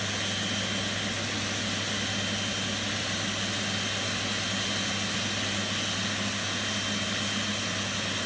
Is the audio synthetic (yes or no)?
no